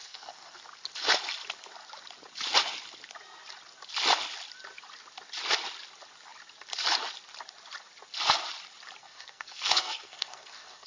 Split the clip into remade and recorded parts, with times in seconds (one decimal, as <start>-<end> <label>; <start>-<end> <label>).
0.0-0.6 remade; 0.6-9.0 recorded; 9.0-10.9 remade